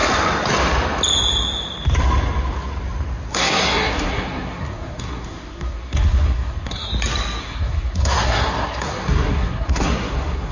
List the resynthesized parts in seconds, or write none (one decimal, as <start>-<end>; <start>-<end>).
3.3-6.9; 7.4-10.5